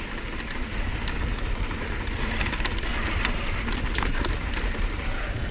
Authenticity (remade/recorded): recorded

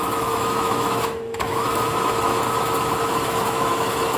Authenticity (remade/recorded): remade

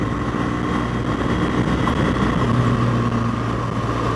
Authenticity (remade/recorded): recorded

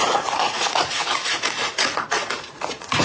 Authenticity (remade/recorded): remade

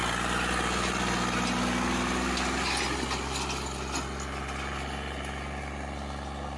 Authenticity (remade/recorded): recorded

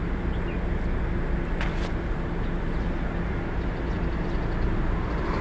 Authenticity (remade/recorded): recorded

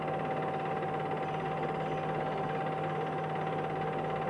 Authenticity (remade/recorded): recorded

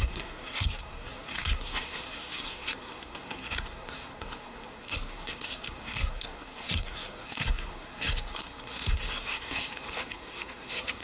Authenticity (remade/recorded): remade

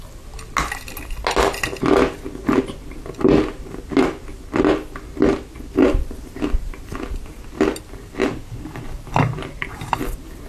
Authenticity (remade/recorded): recorded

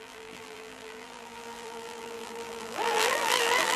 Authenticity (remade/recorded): remade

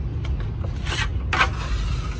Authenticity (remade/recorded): recorded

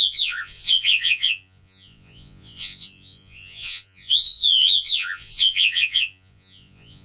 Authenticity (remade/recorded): remade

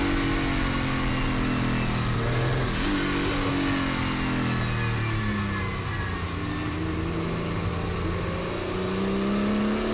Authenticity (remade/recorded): recorded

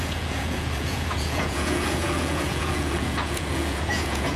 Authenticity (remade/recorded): remade